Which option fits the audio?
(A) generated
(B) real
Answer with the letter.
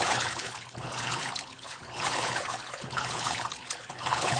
A